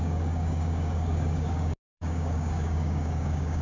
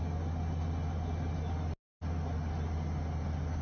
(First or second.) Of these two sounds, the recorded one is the second